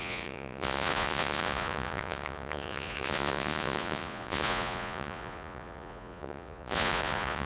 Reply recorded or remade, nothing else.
remade